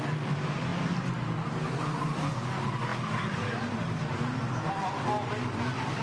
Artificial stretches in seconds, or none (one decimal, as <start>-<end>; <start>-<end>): none